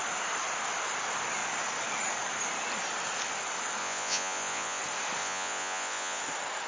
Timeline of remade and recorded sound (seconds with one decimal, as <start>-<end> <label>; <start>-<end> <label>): 0.0-3.8 recorded; 3.8-4.8 remade; 4.8-5.2 recorded; 5.2-6.2 remade; 6.2-6.7 recorded